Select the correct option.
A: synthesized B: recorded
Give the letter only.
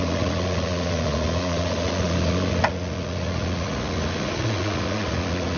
A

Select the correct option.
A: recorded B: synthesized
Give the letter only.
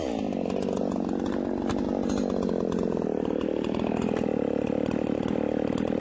A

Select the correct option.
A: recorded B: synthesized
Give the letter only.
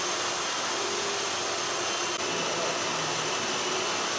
A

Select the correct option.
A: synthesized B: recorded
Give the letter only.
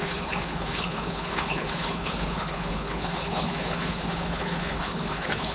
A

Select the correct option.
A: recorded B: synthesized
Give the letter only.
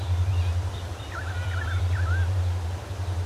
B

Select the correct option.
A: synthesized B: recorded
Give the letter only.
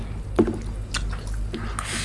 B